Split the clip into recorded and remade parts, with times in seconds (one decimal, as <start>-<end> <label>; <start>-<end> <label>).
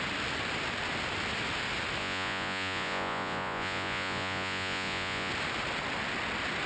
0.0-2.0 recorded; 2.0-5.3 remade; 5.3-6.7 recorded